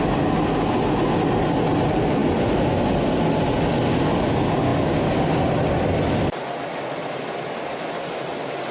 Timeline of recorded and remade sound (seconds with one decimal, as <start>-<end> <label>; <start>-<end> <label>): 0.0-8.7 recorded